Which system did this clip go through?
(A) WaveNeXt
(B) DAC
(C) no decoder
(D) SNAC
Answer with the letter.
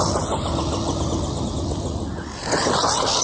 C